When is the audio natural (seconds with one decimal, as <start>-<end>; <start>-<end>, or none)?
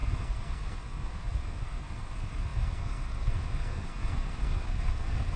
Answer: none